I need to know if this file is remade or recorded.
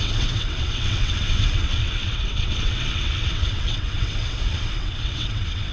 remade